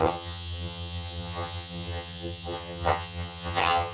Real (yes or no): no